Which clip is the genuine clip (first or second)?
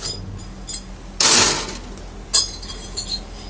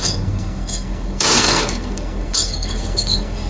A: first